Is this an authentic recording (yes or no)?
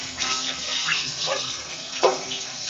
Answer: no